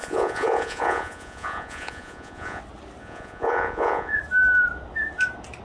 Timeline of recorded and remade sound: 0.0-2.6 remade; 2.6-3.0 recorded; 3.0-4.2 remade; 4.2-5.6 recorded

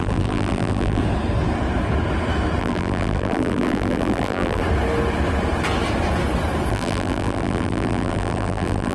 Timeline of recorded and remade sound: 0.0-1.0 remade; 1.0-2.6 recorded; 2.6-4.6 remade; 4.6-6.7 recorded; 6.7-8.9 remade

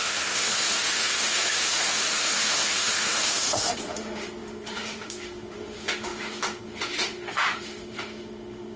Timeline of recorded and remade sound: 0.0-8.8 remade

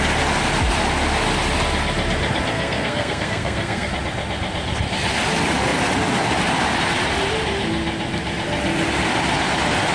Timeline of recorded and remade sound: 0.0-2.5 recorded; 2.5-3.9 remade; 3.9-9.9 recorded

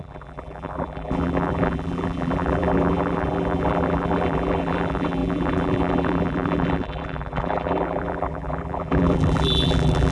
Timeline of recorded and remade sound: 0.0-10.1 remade

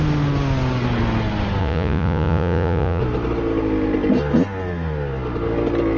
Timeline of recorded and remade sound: 0.0-1.6 recorded; 1.6-3.0 remade; 3.0-6.0 recorded

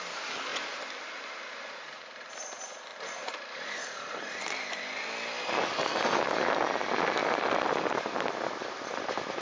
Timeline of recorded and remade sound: 0.0-0.5 recorded; 0.5-2.3 remade; 2.3-2.9 recorded; 2.9-4.8 remade; 4.8-9.4 recorded

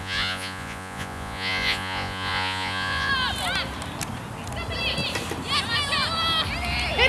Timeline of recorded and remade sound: 0.0-3.1 remade; 3.1-7.1 recorded